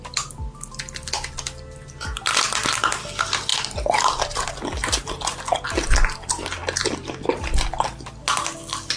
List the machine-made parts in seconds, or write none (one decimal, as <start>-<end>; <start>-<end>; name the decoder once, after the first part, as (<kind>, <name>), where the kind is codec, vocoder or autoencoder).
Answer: none